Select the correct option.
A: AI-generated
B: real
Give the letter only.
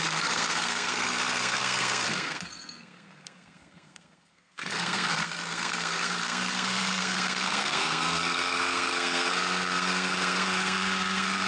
A